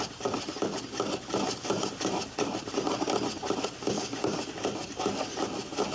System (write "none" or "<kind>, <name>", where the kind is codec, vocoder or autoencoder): none